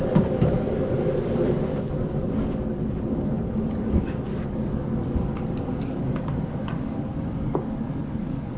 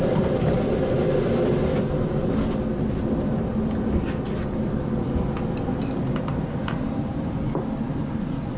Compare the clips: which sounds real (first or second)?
second